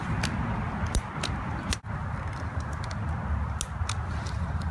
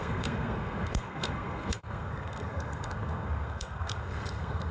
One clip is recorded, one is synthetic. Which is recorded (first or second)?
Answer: first